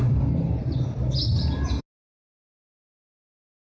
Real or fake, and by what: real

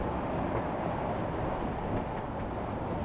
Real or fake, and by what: real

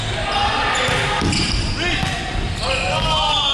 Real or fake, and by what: real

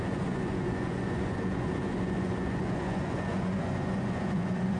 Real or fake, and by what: fake, vocoder, Vocos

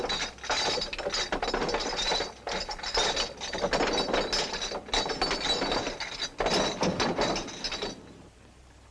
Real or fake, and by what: real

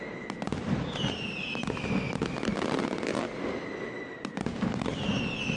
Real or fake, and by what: real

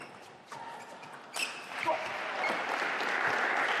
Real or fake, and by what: real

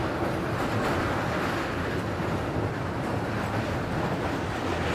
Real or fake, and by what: real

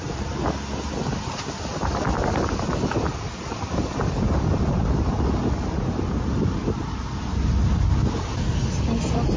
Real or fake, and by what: real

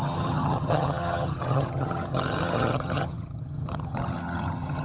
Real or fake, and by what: fake, vocoder, HiFi-GAN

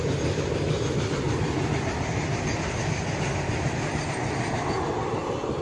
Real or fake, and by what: real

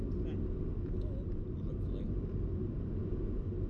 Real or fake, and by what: real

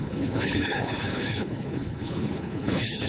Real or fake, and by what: fake, codec, HILCodec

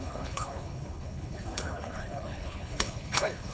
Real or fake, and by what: fake, codec, HILCodec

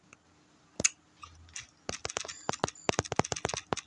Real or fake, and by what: real